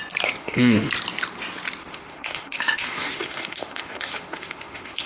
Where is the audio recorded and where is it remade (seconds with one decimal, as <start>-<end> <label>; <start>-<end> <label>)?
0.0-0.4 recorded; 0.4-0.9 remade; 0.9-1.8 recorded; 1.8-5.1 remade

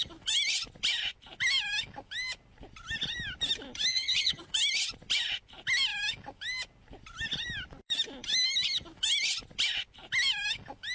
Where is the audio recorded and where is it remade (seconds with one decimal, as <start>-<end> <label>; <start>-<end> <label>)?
0.0-3.9 recorded; 3.9-4.5 remade; 4.5-10.9 recorded

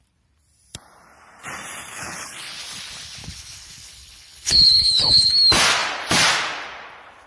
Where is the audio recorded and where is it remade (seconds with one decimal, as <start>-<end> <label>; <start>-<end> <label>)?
0.0-1.9 recorded; 1.9-2.5 remade; 2.5-3.2 recorded; 3.2-5.3 remade; 5.3-7.3 recorded